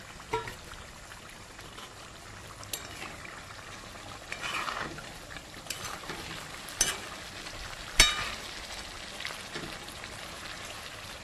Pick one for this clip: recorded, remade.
recorded